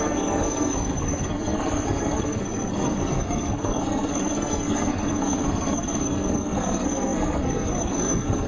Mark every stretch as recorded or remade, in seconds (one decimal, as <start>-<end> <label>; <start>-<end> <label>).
0.0-8.5 remade